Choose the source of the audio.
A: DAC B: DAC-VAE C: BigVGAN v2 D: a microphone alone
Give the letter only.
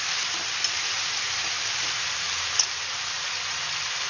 D